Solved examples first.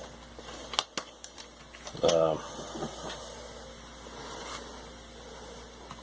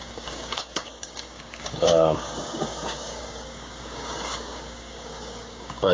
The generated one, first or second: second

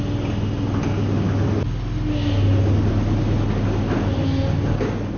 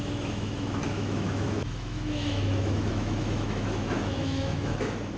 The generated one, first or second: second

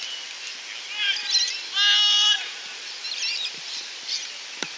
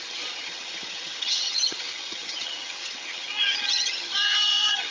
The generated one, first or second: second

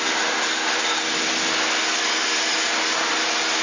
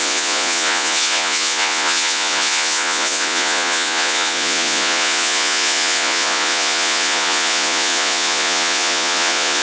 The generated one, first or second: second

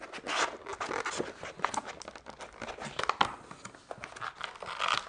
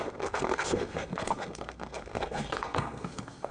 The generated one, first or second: second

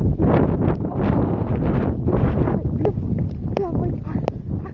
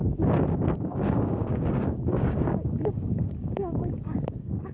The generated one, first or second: second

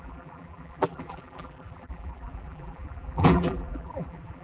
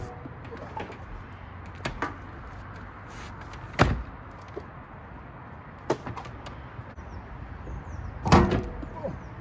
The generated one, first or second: first